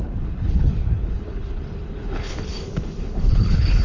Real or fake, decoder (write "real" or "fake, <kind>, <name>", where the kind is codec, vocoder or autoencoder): fake, codec, HILCodec